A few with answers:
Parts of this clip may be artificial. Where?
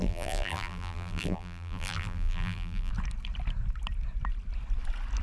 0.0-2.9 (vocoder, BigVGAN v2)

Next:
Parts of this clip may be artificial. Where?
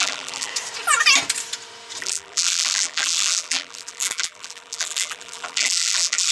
0.0-0.5 (vocoder, BigVGAN v2); 2.0-6.3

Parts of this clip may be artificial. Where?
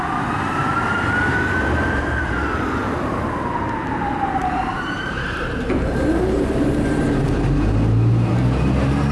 4.4-7.2 (vocoder, BigVGAN v2)